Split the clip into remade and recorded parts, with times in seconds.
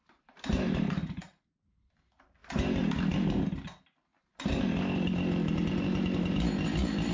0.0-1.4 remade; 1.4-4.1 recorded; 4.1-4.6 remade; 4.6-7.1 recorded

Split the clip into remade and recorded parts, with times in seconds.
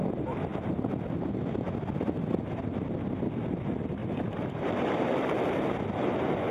0.0-4.0 recorded; 4.0-5.8 remade; 5.8-6.5 recorded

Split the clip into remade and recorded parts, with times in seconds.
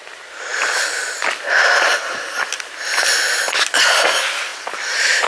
0.0-5.3 recorded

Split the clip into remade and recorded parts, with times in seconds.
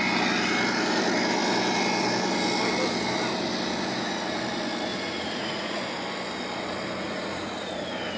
0.0-4.9 recorded; 4.9-5.8 remade; 5.8-7.0 recorded; 7.0-7.7 remade; 7.7-8.2 recorded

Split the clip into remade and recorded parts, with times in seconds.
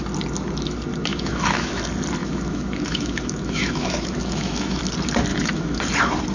0.0-1.1 recorded; 1.1-1.8 remade; 1.8-2.2 recorded; 2.2-4.8 remade; 4.8-5.3 recorded; 5.3-5.8 remade; 5.8-6.3 recorded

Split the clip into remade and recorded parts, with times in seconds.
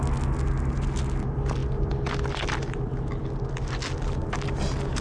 0.0-5.0 recorded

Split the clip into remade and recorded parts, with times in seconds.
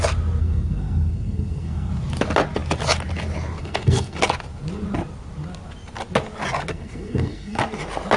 0.0-0.4 recorded; 0.4-1.9 remade; 1.9-3.6 recorded; 3.6-4.2 remade; 4.2-6.7 recorded; 6.7-7.6 remade; 7.6-8.2 recorded